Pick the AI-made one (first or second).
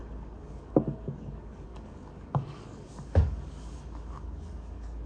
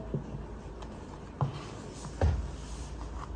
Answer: first